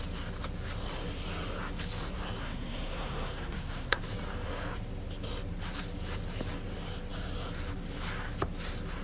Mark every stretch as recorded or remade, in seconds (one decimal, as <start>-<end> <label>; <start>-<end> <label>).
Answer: 0.0-2.4 recorded; 2.4-4.0 remade; 4.0-9.0 recorded